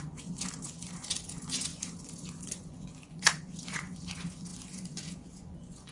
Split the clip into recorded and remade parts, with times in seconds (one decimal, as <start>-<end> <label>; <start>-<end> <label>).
0.0-5.9 remade